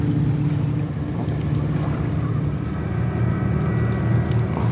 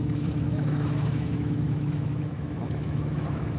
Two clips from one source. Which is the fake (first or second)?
second